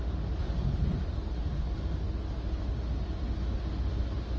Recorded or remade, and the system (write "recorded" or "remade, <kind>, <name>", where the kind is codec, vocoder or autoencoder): recorded